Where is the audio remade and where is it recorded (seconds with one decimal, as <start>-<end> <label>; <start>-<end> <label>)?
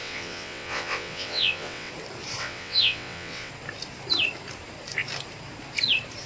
0.0-1.9 remade; 1.9-2.4 recorded; 2.4-3.5 remade; 3.5-6.3 recorded